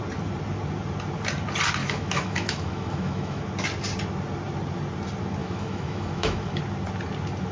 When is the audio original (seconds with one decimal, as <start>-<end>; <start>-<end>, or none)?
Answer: 0.0-1.8; 3.4-5.4; 6.6-7.5